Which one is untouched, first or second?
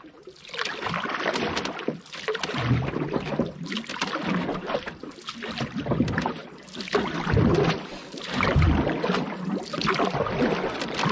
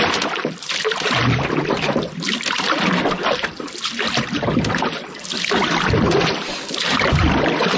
first